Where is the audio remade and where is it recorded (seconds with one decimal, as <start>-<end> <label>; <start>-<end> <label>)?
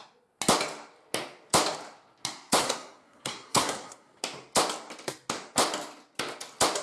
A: 0.0-2.6 recorded; 2.6-4.2 remade; 4.2-6.8 recorded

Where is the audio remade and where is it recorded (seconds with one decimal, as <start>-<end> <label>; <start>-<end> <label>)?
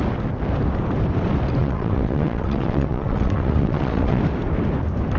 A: 0.0-1.6 recorded; 1.6-4.2 remade; 4.2-5.2 recorded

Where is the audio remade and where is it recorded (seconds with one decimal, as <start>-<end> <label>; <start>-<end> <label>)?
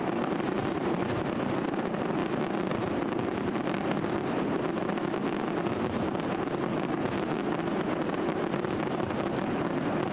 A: 0.0-10.1 recorded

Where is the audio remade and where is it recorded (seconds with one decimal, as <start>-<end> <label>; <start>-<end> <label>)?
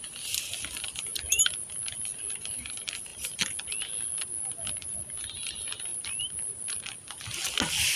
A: 0.0-8.0 recorded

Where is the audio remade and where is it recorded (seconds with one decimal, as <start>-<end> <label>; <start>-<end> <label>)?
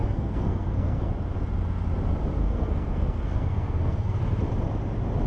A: 0.0-1.1 remade; 1.1-2.4 recorded; 2.4-4.2 remade; 4.2-5.3 recorded